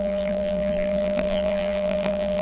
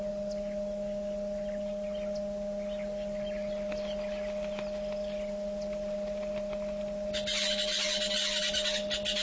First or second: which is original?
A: second